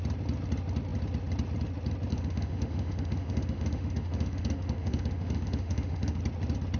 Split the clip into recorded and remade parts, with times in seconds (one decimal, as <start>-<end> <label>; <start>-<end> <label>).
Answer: 0.0-2.1 recorded; 2.1-6.2 remade; 6.2-6.8 recorded

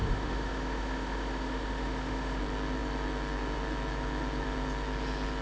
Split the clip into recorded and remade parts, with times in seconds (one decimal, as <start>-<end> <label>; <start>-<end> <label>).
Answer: 0.0-2.4 remade; 2.4-5.4 recorded

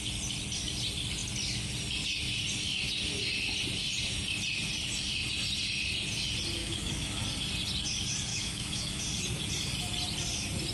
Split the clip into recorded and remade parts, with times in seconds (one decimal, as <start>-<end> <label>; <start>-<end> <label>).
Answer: 0.0-6.6 recorded; 6.6-7.2 remade; 7.2-8.3 recorded; 8.3-9.0 remade; 9.0-10.7 recorded

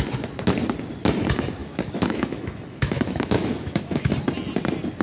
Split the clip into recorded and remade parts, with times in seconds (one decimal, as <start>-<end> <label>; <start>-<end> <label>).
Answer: 0.0-1.6 recorded; 1.6-4.1 remade; 4.1-5.0 recorded